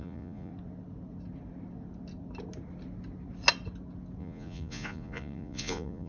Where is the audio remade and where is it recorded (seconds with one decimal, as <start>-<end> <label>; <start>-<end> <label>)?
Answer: 0.0-0.5 remade; 0.5-4.2 recorded; 4.2-6.1 remade